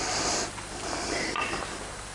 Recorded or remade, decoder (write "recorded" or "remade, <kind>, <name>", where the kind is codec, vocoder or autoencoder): remade, vocoder, BigVGAN v2